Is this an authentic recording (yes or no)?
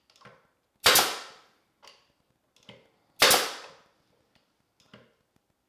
yes